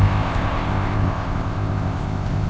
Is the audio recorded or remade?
remade